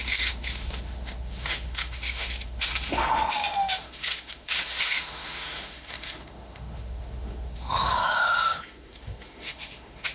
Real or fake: fake